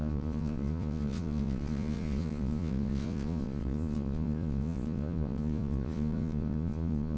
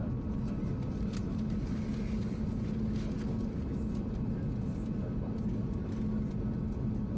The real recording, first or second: second